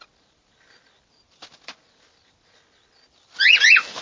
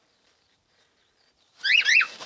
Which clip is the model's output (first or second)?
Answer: second